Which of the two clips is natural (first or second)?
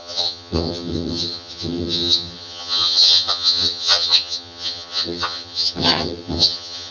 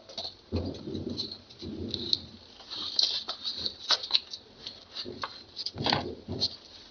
second